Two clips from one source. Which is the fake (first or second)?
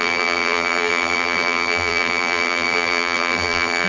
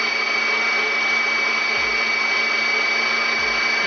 first